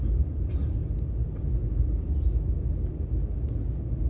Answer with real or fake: real